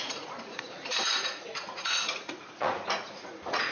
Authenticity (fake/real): fake